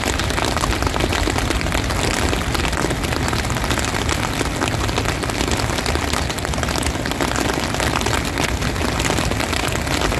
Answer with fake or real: real